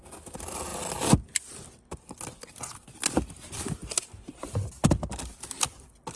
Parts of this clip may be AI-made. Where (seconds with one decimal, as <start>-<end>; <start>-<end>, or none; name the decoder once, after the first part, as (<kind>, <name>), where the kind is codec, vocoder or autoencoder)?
none